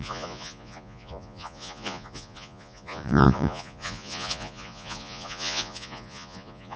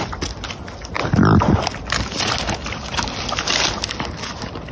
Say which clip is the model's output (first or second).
first